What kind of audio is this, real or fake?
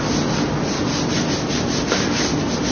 real